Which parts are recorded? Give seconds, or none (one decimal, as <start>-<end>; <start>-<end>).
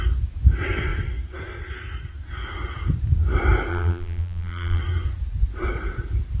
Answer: 0.0-3.7; 4.8-6.4